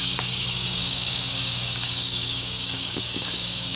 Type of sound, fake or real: fake